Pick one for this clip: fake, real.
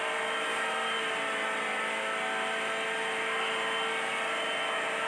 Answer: real